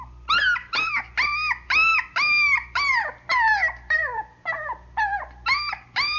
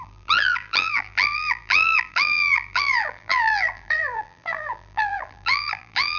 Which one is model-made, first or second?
second